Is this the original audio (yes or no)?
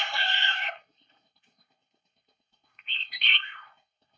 no